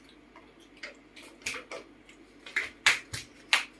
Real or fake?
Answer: real